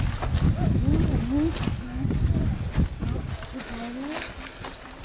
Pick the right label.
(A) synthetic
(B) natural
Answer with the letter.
B